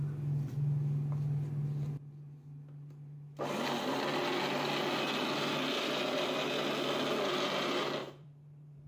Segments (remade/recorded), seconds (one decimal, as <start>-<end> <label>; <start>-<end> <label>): 0.0-8.0 recorded; 8.0-8.9 remade